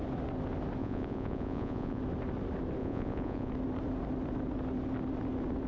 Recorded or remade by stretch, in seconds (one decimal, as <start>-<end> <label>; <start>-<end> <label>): 0.0-0.8 recorded; 0.8-2.0 remade; 2.0-2.8 recorded; 2.8-3.5 remade; 3.5-5.7 recorded

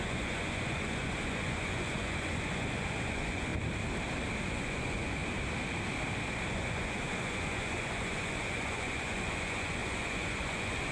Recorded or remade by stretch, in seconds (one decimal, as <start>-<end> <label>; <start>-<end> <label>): 0.0-3.5 remade; 3.5-4.5 recorded; 4.5-5.2 remade; 5.2-6.5 recorded; 6.5-10.9 remade

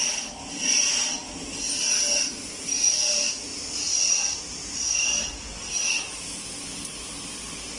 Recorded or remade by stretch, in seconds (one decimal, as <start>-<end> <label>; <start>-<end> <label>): 0.0-7.8 recorded

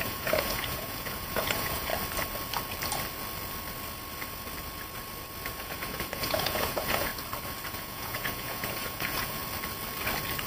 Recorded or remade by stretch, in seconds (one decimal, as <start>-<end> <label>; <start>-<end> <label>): 0.0-1.9 remade; 1.9-5.6 recorded; 5.6-7.1 remade; 7.1-7.7 recorded; 7.7-9.4 remade; 9.4-10.5 recorded

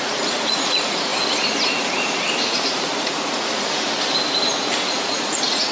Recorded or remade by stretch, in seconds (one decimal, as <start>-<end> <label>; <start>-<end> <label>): 0.0-1.1 remade; 1.1-2.4 recorded; 2.4-3.9 remade; 3.9-4.8 recorded; 4.8-5.7 remade

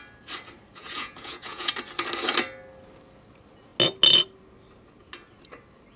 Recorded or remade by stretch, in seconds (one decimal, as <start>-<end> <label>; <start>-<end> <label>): 0.0-0.8 recorded; 0.8-1.7 remade; 1.7-6.0 recorded

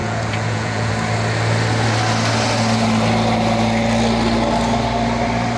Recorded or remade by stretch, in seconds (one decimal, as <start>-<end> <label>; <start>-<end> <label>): 0.0-0.9 remade; 0.9-5.6 recorded